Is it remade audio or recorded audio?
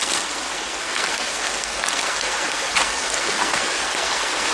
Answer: remade